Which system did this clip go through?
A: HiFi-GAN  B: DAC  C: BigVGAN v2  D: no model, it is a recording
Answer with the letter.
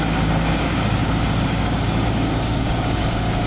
B